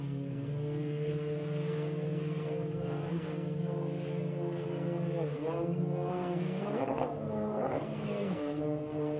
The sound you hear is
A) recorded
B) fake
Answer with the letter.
B